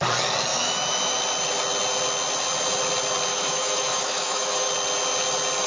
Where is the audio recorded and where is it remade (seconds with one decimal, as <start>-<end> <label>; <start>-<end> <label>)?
0.0-0.5 recorded; 0.5-1.2 remade; 1.2-3.3 recorded; 3.3-4.7 remade; 4.7-5.7 recorded